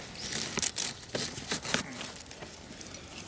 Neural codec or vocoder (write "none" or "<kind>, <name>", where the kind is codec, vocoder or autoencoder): none